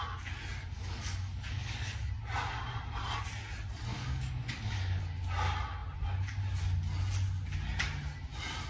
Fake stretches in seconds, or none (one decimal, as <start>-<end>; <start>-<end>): 0.6-2.1; 3.9-5.0